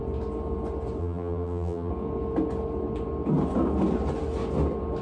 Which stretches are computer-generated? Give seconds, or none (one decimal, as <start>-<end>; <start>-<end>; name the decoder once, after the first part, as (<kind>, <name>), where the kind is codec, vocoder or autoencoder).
1.0-1.9 (vocoder, BigVGAN v2)